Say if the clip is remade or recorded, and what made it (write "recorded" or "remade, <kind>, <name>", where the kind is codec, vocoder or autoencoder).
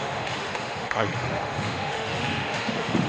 remade, autoencoder, DAC-VAE